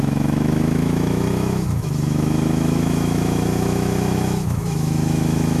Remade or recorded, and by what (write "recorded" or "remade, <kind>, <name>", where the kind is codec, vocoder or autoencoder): remade, autoencoder, DAC-VAE